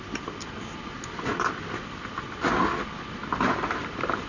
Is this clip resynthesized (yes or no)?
no